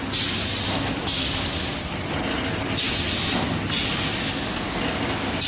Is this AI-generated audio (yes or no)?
no